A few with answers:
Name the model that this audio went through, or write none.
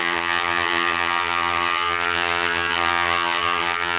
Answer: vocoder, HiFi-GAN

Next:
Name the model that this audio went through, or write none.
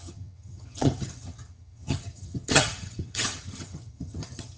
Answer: vocoder, HiFi-GAN